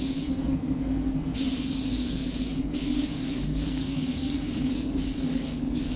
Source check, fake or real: fake